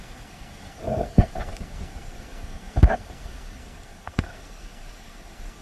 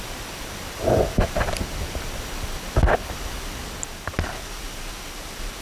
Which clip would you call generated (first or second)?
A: first